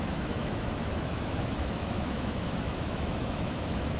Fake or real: fake